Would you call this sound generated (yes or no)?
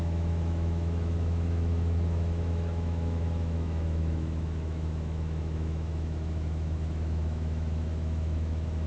yes